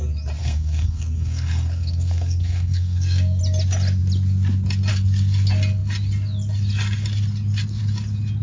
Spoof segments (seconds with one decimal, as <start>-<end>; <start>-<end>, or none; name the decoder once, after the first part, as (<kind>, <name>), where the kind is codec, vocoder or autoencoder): 0.4-3.4 (codec, SNAC)